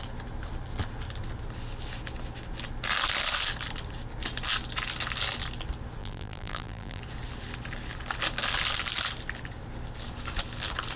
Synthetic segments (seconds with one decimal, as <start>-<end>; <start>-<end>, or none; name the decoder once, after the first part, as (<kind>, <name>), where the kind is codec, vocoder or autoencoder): 6.0-7.0 (vocoder, BigVGAN v2)